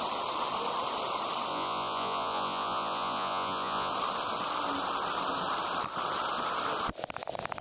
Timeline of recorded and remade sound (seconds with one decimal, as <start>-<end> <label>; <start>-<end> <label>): 0.0-1.5 recorded; 1.5-3.9 remade; 3.9-7.6 recorded